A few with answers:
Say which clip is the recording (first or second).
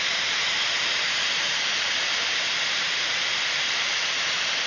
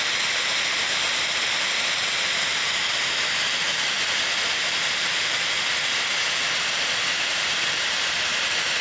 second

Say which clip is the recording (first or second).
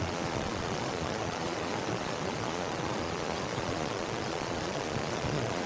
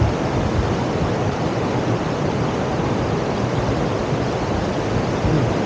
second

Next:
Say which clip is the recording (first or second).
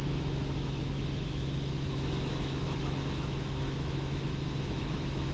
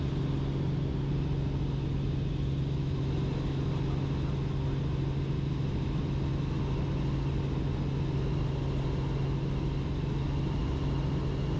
second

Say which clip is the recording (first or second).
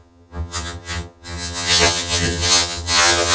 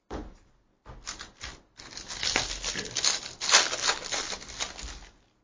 second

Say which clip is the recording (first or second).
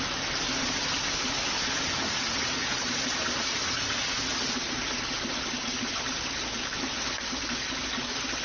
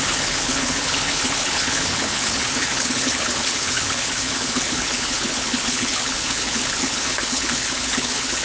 first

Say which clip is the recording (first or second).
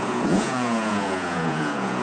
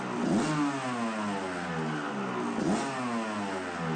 second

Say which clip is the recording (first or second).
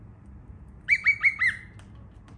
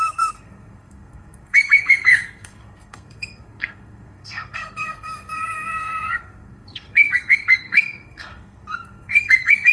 first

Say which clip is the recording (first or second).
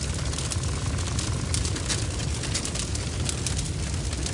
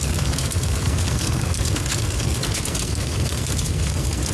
first